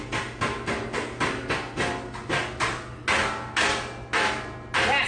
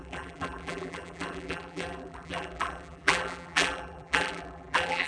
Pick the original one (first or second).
first